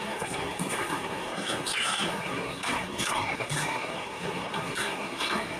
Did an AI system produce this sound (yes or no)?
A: yes